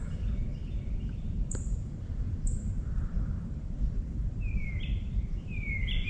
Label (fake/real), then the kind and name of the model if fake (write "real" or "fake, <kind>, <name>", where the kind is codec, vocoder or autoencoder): fake, vocoder, BigVGAN v2